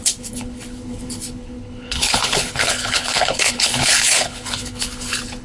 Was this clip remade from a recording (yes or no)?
yes